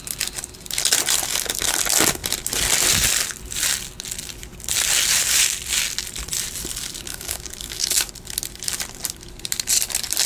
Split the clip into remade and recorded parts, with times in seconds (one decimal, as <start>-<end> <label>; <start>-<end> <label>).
0.0-7.1 recorded; 7.1-8.1 remade; 8.1-10.3 recorded